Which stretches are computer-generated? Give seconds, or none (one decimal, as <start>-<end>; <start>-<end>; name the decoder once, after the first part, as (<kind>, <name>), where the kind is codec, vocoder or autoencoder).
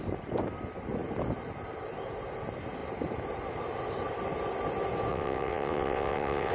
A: 5.1-6.5 (vocoder, WaveNeXt)